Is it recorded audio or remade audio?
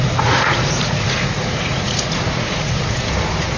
remade